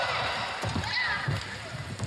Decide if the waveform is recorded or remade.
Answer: recorded